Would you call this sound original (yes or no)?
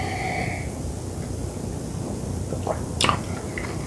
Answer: yes